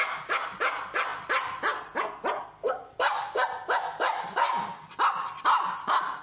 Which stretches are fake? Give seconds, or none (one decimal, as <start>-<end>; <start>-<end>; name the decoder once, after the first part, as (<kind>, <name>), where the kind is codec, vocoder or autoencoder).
none